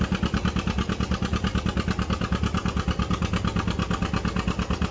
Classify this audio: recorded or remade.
recorded